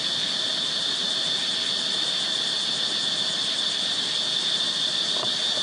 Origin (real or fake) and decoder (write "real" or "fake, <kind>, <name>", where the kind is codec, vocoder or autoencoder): real